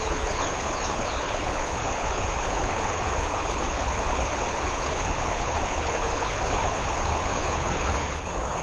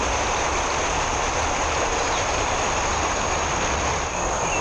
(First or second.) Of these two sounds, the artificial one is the first